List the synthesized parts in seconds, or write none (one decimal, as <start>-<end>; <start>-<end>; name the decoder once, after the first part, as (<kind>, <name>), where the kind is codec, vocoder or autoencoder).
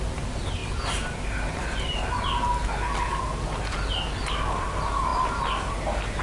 none